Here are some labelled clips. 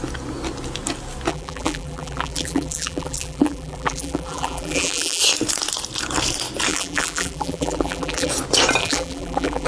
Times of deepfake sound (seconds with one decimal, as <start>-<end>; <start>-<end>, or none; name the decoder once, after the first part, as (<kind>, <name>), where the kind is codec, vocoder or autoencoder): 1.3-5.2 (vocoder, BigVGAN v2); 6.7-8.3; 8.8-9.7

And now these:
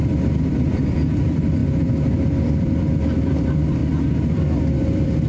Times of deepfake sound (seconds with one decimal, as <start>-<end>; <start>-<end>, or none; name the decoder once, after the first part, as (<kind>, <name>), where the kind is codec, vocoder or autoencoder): 0.0-1.6 (vocoder, BigVGAN v2); 2.4-3.8; 4.5-5.3

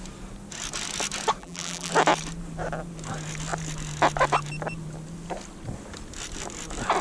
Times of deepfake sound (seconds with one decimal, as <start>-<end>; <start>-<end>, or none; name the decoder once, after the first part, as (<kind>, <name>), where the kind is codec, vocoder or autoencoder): 1.4-1.9 (vocoder, BigVGAN v2)

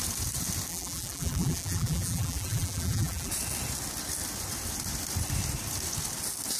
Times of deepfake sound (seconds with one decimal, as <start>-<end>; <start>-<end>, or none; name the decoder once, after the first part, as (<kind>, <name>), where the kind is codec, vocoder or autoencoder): 0.7-3.3 (vocoder, BigVGAN v2)